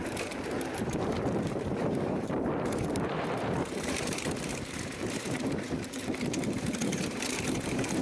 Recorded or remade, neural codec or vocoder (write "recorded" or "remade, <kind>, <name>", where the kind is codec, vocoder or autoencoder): remade, vocoder, BigVGAN v2